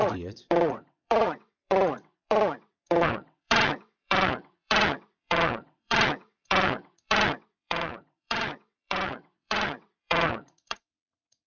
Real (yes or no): no